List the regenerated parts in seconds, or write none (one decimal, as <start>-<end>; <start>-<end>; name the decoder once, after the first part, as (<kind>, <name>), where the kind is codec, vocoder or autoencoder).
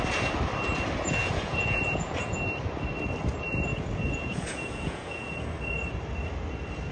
1.2-2.4 (vocoder, Vocos); 3.7-5.5